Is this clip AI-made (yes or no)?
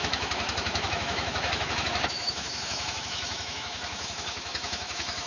yes